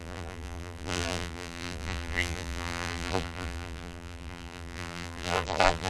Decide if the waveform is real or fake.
fake